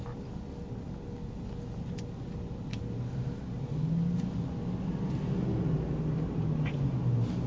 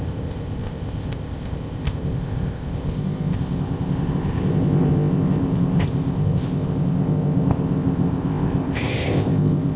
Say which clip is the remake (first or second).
second